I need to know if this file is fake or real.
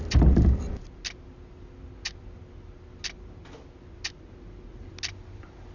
real